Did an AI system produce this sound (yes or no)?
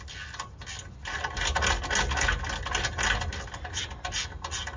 no